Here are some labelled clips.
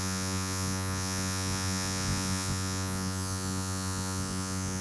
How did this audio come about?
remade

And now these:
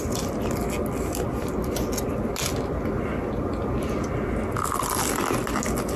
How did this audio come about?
recorded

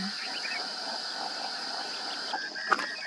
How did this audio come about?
recorded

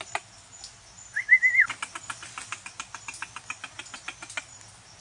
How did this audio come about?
recorded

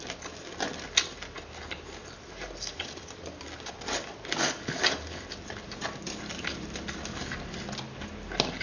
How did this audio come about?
recorded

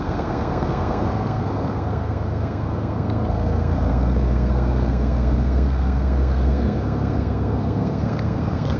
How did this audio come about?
remade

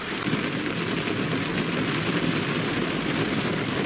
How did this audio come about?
recorded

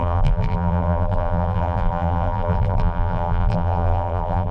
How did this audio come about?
remade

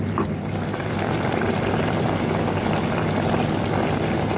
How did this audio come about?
recorded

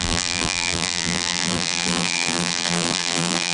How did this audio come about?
remade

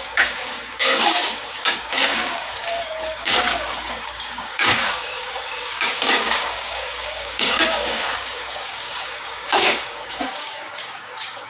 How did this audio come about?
remade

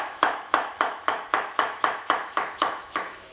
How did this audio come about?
remade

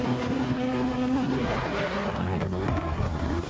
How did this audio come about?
remade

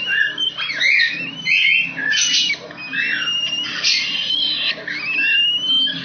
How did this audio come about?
recorded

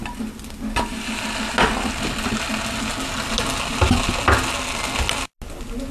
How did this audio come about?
recorded